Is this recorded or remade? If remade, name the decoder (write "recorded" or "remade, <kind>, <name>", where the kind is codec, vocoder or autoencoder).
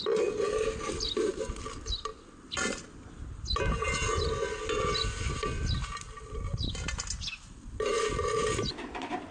recorded